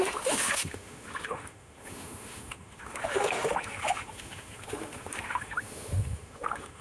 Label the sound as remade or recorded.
remade